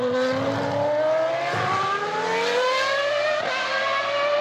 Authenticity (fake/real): real